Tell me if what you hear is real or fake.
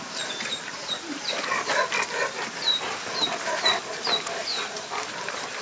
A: real